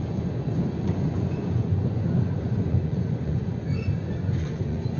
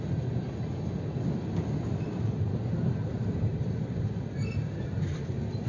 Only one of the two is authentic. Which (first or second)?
second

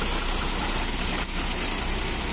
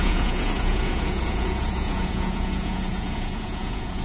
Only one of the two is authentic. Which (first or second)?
first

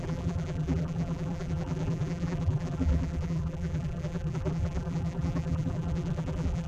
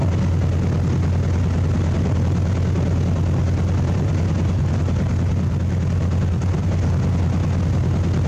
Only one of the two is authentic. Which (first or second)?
second